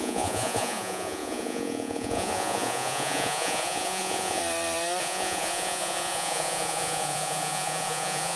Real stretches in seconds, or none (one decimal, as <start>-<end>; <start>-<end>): 4.4-5.0